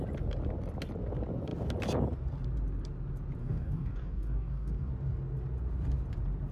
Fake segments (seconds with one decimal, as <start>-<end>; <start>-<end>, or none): 3.4-4.9